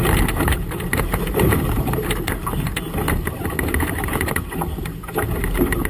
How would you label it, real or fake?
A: real